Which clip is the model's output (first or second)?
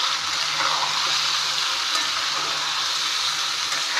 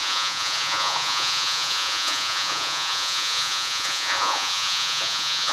second